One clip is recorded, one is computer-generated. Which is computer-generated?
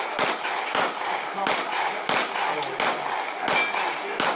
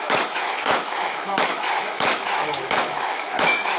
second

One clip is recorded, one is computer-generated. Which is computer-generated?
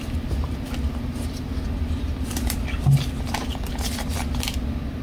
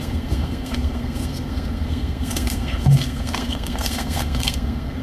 second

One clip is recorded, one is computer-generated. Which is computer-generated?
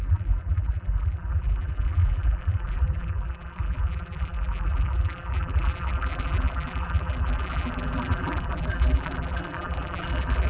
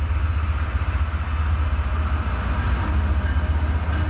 first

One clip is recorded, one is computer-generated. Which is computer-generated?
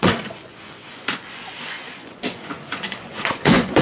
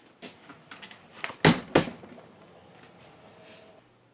first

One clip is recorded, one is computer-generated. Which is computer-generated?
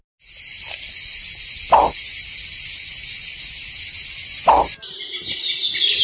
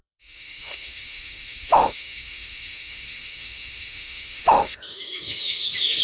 second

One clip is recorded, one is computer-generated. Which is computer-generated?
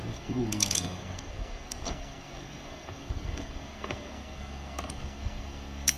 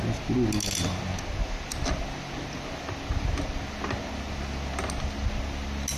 first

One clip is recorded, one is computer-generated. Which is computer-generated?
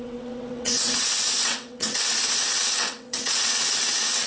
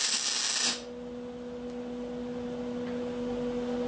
first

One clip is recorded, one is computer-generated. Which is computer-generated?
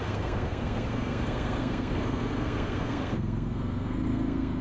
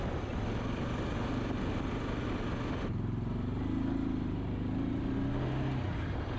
first